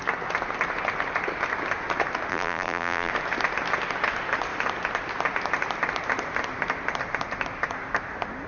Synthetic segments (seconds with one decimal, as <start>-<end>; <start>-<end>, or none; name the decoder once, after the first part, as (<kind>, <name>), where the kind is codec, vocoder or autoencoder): 2.3-3.1 (vocoder, BigVGAN v2)